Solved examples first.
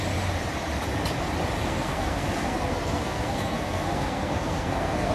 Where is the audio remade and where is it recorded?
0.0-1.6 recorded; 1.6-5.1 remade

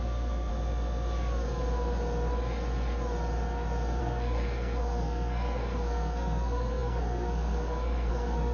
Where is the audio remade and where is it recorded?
0.0-0.5 remade; 0.5-4.0 recorded; 4.0-8.5 remade

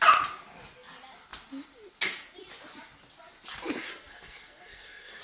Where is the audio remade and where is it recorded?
0.0-4.1 recorded; 4.1-5.2 remade

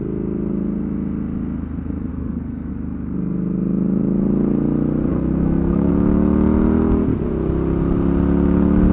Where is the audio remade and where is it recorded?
0.0-2.1 recorded; 2.1-2.7 remade; 2.7-5.1 recorded; 5.1-5.9 remade; 5.9-8.9 recorded

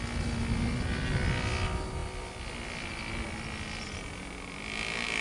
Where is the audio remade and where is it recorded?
0.0-5.2 recorded

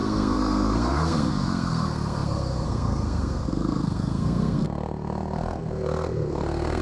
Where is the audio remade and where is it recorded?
0.0-6.8 remade